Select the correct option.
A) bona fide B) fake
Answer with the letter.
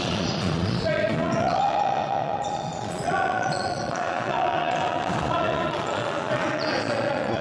B